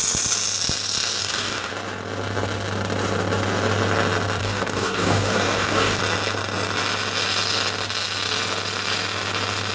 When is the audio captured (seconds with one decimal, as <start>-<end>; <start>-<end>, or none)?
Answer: 0.0-1.2; 1.7-4.4; 6.0-9.7